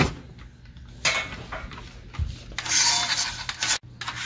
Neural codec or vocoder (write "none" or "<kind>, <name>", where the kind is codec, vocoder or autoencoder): none